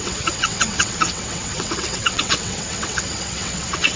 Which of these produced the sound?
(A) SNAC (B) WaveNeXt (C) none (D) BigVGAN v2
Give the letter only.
B